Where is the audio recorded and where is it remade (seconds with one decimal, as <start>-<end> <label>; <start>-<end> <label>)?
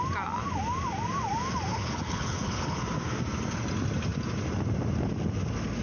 0.0-1.7 recorded; 1.7-2.8 remade; 2.8-5.8 recorded